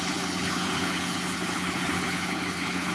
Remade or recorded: remade